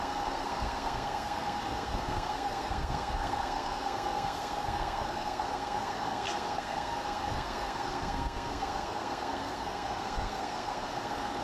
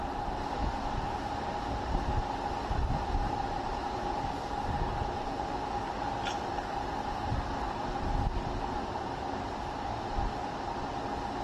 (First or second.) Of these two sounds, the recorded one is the second